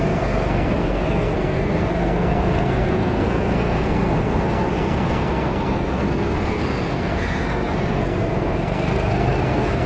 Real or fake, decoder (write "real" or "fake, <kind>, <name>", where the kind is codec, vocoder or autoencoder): fake, codec, SNAC